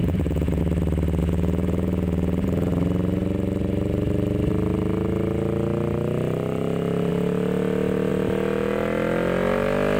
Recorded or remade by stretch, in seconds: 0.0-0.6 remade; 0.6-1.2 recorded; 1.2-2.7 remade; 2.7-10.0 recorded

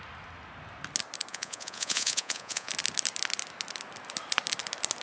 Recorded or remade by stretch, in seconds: 0.0-1.3 recorded; 1.3-2.7 remade; 2.7-5.0 recorded

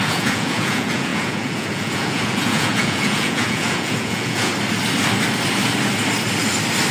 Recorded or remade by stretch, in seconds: 0.0-4.5 remade; 4.5-6.9 recorded

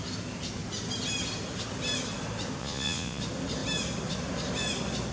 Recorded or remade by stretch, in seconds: 0.0-2.6 recorded; 2.6-3.2 remade; 3.2-5.1 recorded

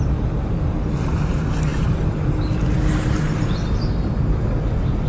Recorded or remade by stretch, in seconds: 0.0-5.1 recorded

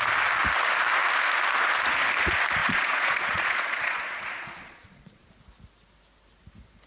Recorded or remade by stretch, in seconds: 0.0-2.6 recorded; 2.6-5.3 remade; 5.3-6.9 recorded

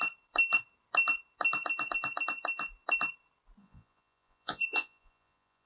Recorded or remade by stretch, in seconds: 0.0-3.6 recorded; 3.6-5.7 remade

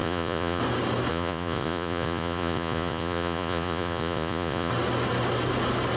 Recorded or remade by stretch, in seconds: 0.0-0.6 remade; 0.6-1.1 recorded; 1.1-4.7 remade; 4.7-6.0 recorded